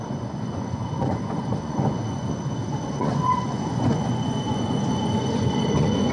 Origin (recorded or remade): remade